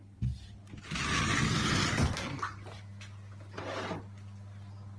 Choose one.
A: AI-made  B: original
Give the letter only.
B